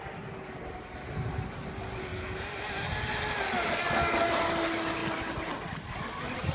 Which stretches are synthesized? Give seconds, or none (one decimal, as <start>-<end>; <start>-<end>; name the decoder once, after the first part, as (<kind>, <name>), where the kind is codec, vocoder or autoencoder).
none